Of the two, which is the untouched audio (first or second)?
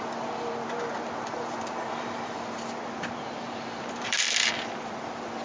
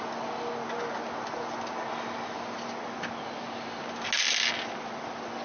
second